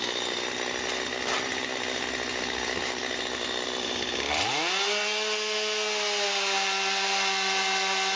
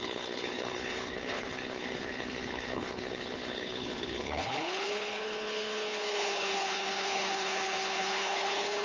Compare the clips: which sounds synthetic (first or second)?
second